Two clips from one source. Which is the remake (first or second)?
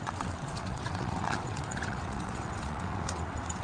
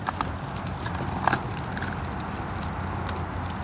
first